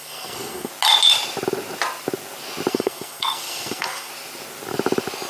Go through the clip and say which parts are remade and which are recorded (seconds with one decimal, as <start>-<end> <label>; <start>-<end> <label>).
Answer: 0.0-0.7 remade; 0.7-2.7 recorded; 2.7-4.1 remade; 4.1-5.3 recorded